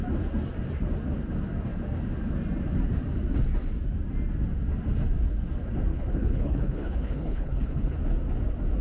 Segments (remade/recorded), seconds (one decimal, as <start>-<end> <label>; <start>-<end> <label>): 0.0-5.9 recorded; 5.9-8.0 remade; 8.0-8.8 recorded